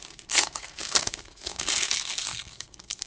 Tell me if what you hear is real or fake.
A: fake